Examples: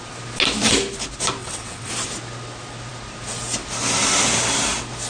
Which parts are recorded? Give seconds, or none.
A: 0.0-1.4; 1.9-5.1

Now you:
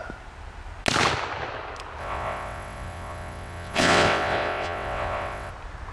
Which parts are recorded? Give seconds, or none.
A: 0.0-2.0; 5.5-5.9